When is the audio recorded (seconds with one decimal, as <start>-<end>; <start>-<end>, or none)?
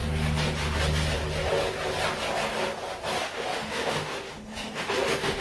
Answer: 0.0-3.2